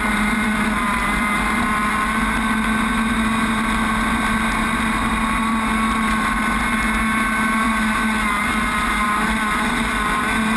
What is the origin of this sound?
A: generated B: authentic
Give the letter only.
B